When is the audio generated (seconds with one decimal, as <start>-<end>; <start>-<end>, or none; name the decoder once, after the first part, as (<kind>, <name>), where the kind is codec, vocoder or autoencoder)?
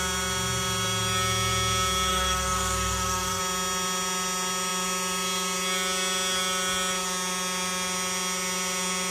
2.1-3.4 (codec, SNAC)